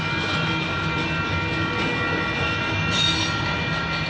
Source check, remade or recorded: recorded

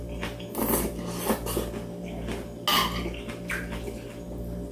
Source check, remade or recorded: recorded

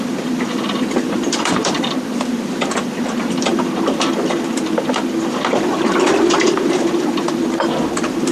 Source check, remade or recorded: remade